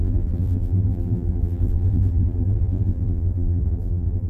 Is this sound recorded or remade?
remade